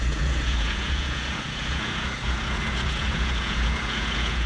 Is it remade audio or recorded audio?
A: remade